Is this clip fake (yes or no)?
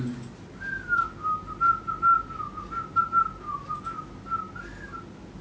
no